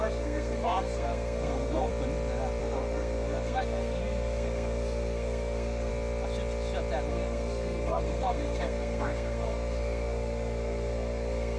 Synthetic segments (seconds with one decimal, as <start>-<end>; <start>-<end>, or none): 0.0-1.9; 2.6-5.9; 7.1-11.6